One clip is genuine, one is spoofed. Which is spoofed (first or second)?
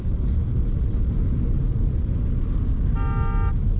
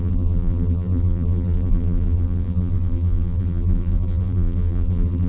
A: second